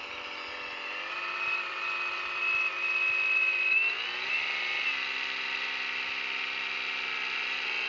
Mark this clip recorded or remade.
recorded